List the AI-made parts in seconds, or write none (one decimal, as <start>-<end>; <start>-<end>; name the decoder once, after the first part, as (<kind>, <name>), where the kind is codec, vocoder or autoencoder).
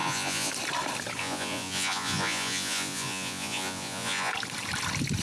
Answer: 0.0-0.5 (vocoder, Vocos); 1.2-4.3